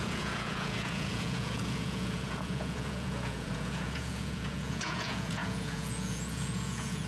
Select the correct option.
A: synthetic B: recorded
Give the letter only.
A